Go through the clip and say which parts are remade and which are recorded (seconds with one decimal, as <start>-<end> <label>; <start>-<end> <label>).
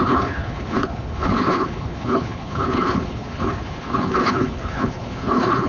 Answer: 0.0-5.7 remade